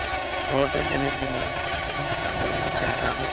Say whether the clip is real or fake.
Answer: fake